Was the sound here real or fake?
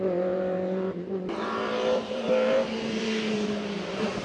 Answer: fake